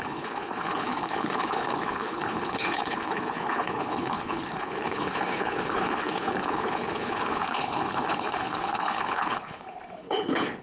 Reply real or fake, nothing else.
fake